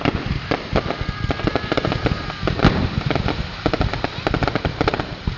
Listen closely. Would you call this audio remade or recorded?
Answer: remade